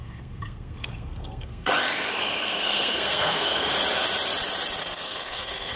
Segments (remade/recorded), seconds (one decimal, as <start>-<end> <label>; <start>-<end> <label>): 0.0-1.7 remade; 1.7-2.1 recorded; 2.1-3.7 remade; 3.7-4.8 recorded; 4.8-5.8 remade